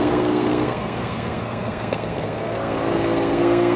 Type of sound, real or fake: fake